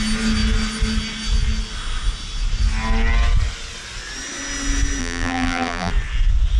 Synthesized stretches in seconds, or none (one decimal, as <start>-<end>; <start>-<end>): 5.0-5.9